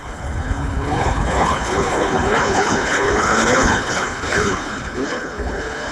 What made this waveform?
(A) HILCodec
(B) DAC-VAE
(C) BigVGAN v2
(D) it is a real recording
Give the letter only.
A